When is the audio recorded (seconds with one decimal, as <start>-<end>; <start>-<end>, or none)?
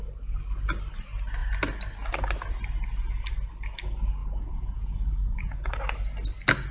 0.0-4.2; 5.7-6.7